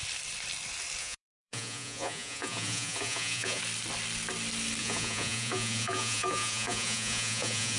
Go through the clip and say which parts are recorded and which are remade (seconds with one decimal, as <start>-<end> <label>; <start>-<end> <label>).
0.0-1.0 recorded; 1.0-3.6 remade; 3.6-4.8 recorded; 4.8-7.8 remade